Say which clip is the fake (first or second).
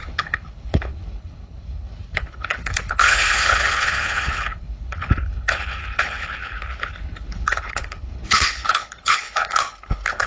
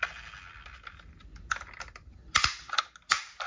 first